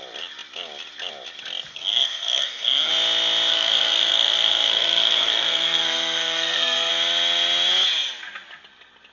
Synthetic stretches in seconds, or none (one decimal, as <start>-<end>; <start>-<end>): 1.7-2.9; 3.5-6.9